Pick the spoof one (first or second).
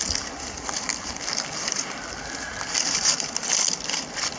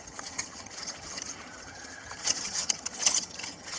second